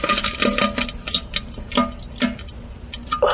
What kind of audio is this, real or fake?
real